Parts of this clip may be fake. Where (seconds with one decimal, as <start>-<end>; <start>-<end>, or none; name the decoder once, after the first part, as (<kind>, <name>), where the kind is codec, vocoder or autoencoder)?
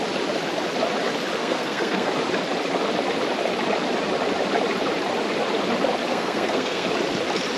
1.4-2.1 (codec, SNAC); 6.1-6.9